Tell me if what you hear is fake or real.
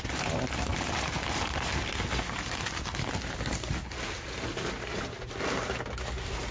real